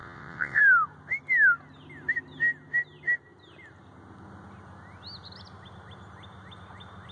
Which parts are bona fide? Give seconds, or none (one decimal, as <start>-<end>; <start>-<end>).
0.6-7.1